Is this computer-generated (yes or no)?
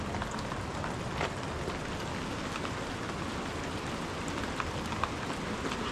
no